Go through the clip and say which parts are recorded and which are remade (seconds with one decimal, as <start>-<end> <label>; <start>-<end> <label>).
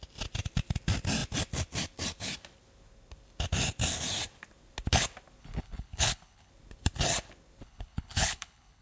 0.0-5.4 recorded; 5.4-6.5 remade; 6.5-7.6 recorded; 7.6-8.8 remade